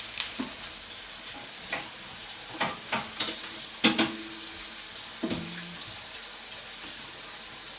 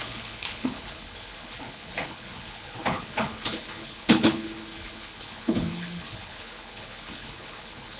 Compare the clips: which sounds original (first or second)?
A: first